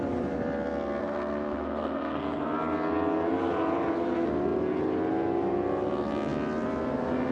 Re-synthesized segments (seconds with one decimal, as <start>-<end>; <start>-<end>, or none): 1.0-2.4